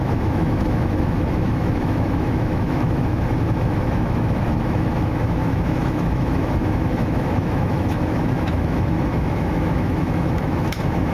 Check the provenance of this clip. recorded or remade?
remade